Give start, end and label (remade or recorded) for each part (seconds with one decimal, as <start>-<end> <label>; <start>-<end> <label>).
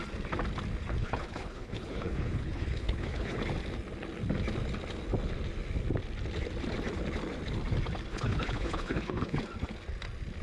0.0-1.0 recorded; 1.0-3.4 remade; 3.4-8.1 recorded; 8.1-9.4 remade; 9.4-10.4 recorded